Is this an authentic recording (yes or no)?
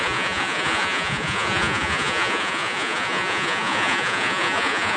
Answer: no